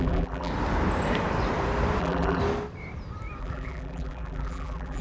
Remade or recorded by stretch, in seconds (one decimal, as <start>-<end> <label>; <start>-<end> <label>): 0.0-0.5 remade; 0.5-2.0 recorded; 2.0-2.4 remade; 2.4-3.4 recorded; 3.4-5.0 remade

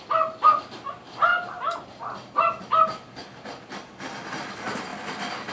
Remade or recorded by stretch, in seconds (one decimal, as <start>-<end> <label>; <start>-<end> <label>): 0.0-5.5 recorded

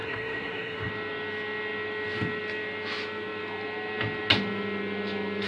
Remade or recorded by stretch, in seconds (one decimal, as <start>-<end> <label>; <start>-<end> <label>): 0.0-0.9 remade; 0.9-5.5 recorded